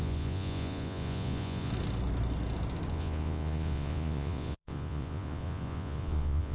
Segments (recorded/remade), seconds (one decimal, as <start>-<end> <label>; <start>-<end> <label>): 0.0-1.7 remade; 1.7-2.9 recorded; 2.9-6.5 remade